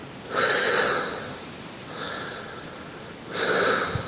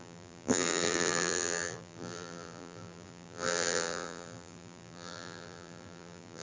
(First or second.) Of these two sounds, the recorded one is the first